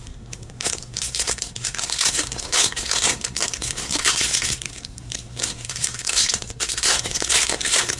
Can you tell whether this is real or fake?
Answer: fake